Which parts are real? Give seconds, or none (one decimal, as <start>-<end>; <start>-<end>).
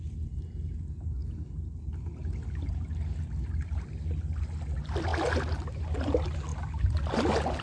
0.0-7.6